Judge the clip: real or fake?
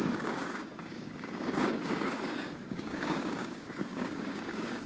fake